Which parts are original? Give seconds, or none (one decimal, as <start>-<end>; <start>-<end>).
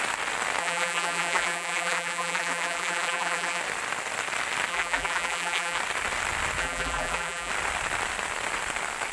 0.0-0.6; 3.6-4.7; 5.8-6.6; 7.5-9.1